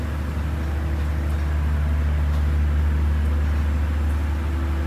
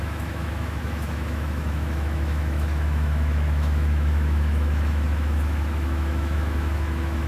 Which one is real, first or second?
first